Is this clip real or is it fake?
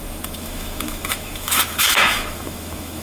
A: fake